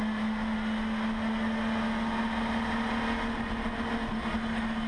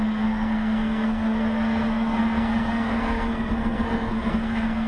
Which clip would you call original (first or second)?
first